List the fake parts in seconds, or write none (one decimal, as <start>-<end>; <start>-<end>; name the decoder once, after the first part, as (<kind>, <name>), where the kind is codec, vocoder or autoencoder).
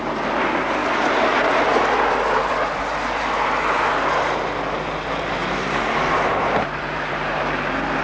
5.4-7.4 (vocoder, BigVGAN v2)